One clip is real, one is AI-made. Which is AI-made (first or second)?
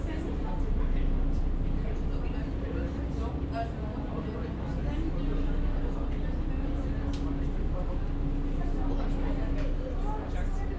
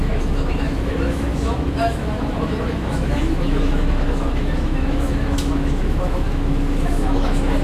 second